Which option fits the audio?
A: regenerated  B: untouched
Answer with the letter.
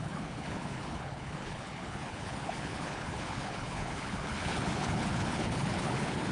A